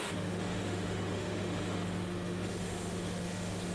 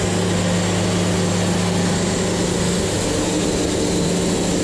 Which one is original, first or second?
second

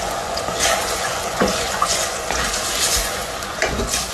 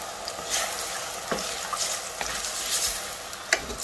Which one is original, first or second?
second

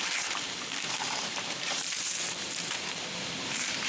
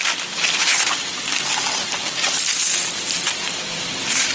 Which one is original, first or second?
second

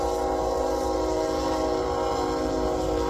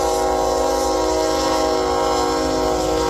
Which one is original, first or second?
second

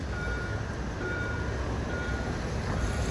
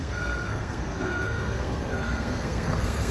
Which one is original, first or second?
first